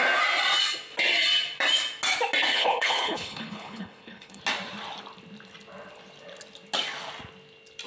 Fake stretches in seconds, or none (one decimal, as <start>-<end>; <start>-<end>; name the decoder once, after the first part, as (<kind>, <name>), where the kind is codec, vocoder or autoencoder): 2.5-4.4 (codec, HILCodec)